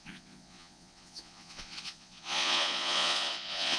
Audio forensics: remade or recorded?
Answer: remade